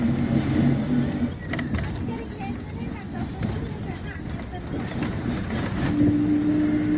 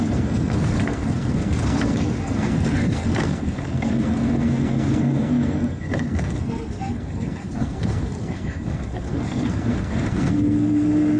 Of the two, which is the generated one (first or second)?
second